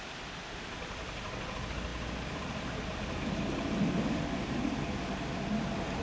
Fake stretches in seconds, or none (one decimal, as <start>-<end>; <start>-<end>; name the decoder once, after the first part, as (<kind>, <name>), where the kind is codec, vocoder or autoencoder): none